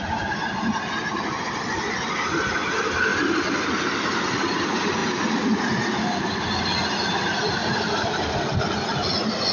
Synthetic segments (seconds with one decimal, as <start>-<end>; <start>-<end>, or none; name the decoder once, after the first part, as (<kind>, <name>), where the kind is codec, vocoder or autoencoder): 7.6-8.6 (vocoder, BigVGAN v2)